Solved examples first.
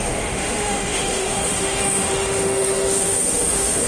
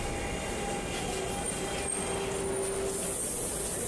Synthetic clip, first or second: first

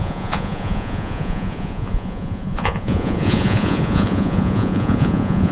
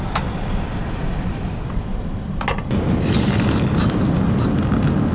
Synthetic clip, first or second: first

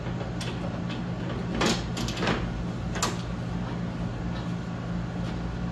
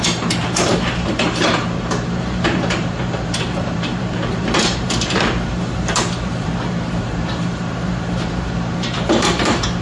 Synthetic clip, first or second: second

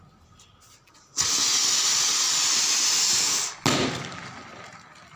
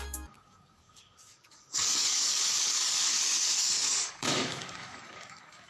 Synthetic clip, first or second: second